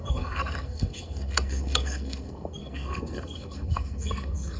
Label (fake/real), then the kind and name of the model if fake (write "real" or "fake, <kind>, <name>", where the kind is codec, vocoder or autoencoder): fake, codec, SNAC